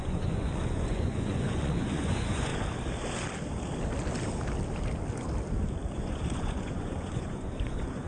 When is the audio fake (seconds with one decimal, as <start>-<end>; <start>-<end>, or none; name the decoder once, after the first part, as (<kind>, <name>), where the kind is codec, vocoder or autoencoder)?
0.0-2.5 (vocoder, Vocos); 5.9-8.1